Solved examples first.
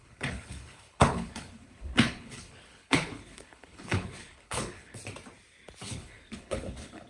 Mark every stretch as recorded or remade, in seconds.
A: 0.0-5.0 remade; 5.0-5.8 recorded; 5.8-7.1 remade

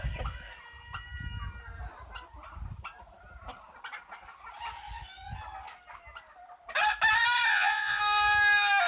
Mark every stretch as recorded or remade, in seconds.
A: 0.0-7.5 recorded; 7.5-8.0 remade; 8.0-8.9 recorded

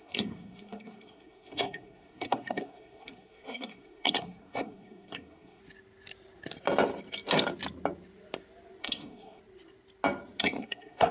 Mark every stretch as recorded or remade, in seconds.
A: 0.0-5.6 remade; 5.6-8.8 recorded; 8.8-9.4 remade; 9.4-10.4 recorded; 10.4-11.1 remade

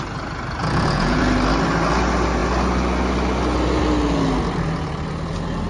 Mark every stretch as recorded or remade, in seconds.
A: 0.0-0.6 recorded; 0.6-1.2 remade; 1.2-5.7 recorded

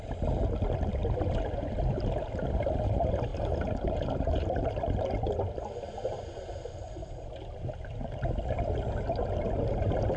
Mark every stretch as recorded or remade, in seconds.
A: 0.0-1.0 recorded; 1.0-2.8 remade; 2.8-10.2 recorded

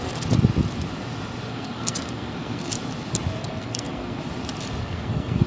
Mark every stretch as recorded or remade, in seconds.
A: 0.0-1.5 recorded; 1.5-2.7 remade; 2.7-3.4 recorded; 3.4-4.2 remade; 4.2-4.8 recorded; 4.8-5.5 remade